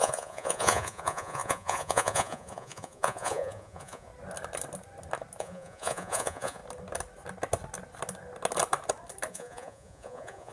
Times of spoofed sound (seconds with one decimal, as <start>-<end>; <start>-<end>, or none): 0.0-4.1; 5.4-6.6; 9.3-10.5